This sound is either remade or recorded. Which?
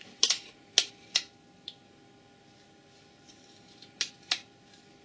recorded